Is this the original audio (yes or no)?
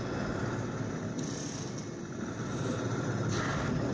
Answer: yes